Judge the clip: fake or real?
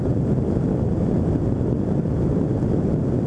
real